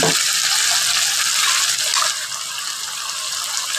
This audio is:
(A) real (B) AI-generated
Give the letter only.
A